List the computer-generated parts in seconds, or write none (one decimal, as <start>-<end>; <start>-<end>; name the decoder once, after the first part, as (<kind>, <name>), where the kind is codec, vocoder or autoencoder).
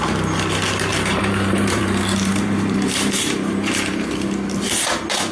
0.9-4.1 (vocoder, BigVGAN v2)